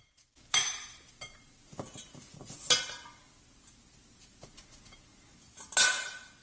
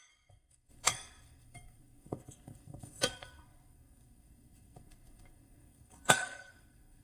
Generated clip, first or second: second